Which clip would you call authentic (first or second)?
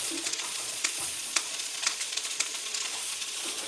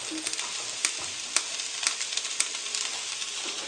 second